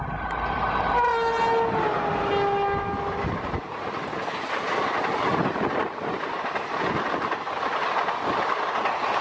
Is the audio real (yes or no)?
yes